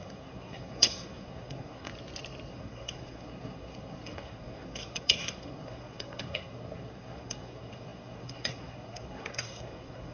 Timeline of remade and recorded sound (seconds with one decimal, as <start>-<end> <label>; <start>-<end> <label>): 0.0-1.9 remade; 1.9-2.5 recorded; 2.5-10.1 remade